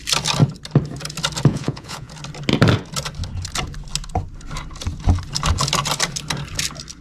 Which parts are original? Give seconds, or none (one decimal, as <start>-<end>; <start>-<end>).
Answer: 0.0-1.5; 2.1-7.0